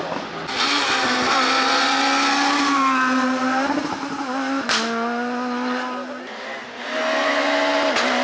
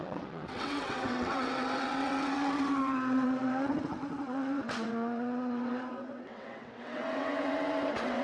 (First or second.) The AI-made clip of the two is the second